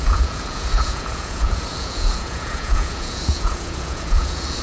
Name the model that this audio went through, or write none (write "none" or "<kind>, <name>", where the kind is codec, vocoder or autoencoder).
vocoder, Vocos